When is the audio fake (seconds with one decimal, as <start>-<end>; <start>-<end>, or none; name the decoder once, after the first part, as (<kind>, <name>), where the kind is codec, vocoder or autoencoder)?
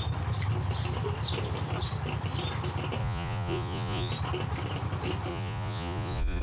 3.0-4.1 (vocoder, Vocos); 5.3-6.4